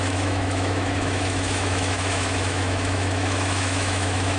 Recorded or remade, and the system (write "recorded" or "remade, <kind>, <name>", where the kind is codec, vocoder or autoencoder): remade, autoencoder, DAC-VAE